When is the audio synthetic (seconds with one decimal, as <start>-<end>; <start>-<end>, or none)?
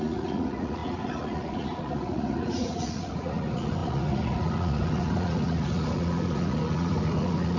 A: 0.0-7.6